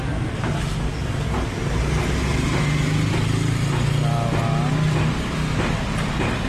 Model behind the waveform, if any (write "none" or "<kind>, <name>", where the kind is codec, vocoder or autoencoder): none